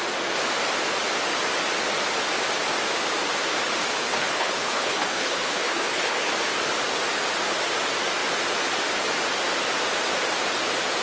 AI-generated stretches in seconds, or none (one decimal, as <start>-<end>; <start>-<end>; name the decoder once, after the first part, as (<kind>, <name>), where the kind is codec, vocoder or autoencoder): 3.8-6.3 (codec, HILCodec)